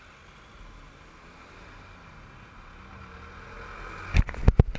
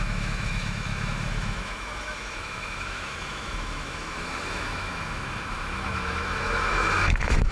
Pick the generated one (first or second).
second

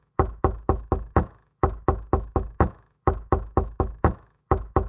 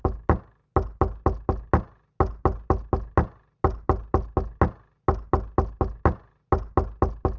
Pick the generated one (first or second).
first